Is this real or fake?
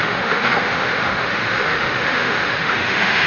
fake